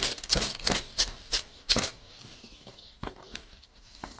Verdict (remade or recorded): remade